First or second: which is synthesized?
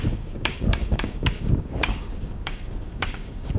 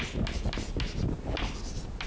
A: first